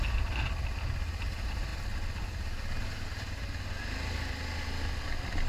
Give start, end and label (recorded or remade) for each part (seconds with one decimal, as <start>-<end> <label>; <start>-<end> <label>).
0.0-5.5 recorded